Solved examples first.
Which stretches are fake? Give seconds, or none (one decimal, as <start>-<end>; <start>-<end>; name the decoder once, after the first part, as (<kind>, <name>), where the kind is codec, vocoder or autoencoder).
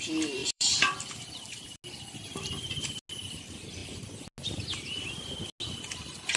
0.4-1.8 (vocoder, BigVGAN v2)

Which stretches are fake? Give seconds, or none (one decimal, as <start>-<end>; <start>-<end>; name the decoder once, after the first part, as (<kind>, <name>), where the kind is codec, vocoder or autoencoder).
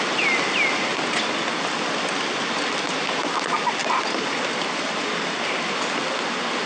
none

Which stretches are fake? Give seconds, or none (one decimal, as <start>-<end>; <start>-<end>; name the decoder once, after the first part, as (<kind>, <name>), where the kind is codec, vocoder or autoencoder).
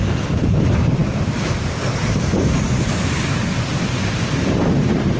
none